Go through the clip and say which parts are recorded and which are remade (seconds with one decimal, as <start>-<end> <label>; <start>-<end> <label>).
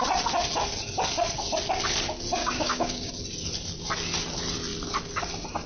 0.0-2.4 recorded; 2.4-3.1 remade; 3.1-5.7 recorded